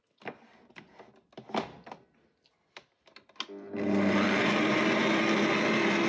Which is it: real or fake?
real